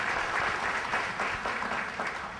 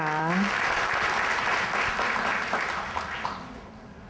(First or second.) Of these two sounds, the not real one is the first